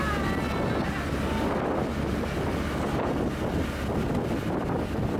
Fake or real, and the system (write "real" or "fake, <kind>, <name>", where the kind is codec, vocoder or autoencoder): real